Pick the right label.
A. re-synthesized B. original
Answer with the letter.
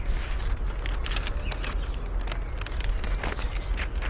B